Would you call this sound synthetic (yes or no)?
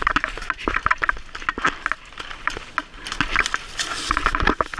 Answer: no